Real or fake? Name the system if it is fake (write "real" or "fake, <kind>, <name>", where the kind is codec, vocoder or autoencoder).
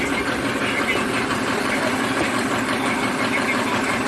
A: fake, vocoder, BigVGAN v2